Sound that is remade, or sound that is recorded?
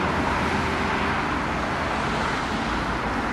recorded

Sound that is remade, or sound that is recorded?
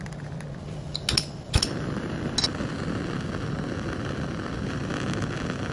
recorded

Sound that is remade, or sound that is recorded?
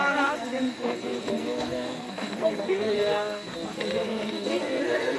remade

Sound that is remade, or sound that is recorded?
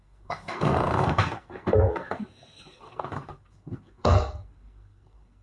remade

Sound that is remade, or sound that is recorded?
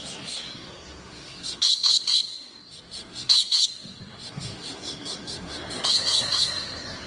remade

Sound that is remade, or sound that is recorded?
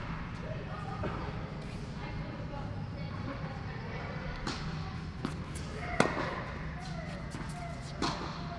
recorded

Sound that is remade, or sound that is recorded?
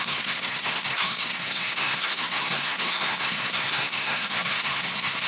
remade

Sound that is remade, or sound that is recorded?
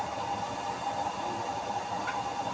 recorded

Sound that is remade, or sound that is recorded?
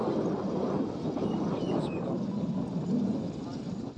recorded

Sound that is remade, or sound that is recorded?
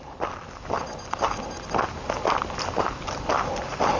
recorded